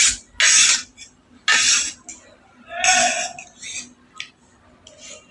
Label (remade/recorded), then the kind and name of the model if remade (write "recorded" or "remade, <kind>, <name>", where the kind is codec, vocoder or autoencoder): recorded